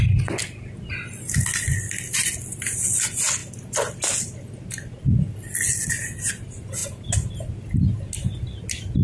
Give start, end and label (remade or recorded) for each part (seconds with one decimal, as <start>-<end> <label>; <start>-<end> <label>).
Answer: 0.0-9.0 recorded